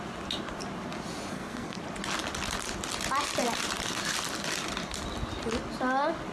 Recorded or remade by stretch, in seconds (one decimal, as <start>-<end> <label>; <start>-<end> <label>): 0.0-1.3 recorded; 1.3-1.8 remade; 1.8-6.3 recorded